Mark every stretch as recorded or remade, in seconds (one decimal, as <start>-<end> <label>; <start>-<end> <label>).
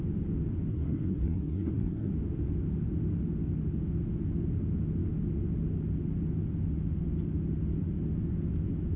0.0-0.7 recorded; 0.7-2.1 remade; 2.1-9.0 recorded